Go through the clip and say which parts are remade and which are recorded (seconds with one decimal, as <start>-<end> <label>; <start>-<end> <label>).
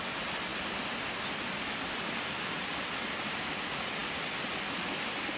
0.0-5.4 recorded